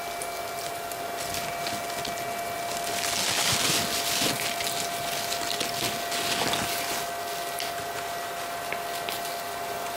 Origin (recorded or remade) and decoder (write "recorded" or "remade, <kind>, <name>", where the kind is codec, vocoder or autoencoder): recorded